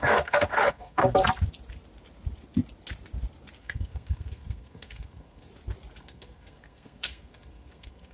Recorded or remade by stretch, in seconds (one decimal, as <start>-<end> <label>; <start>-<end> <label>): 0.0-1.0 remade; 1.0-3.6 recorded; 3.6-5.5 remade; 5.5-6.0 recorded; 6.0-8.1 remade